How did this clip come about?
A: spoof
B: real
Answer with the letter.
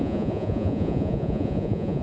A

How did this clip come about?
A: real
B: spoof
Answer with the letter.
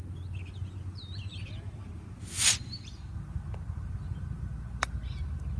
A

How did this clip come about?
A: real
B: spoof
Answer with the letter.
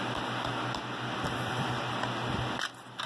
A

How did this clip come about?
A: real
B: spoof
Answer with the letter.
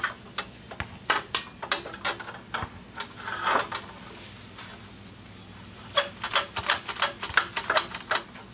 A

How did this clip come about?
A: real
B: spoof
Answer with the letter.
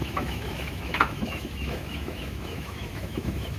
B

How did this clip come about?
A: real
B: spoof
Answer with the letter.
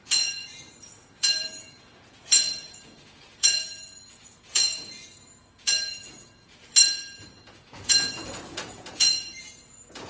B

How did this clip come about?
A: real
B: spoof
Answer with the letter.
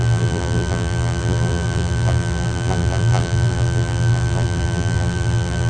B